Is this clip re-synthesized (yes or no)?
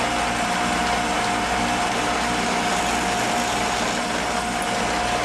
no